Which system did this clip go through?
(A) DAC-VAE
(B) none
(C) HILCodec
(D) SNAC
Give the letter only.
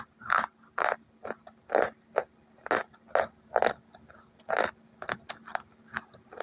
B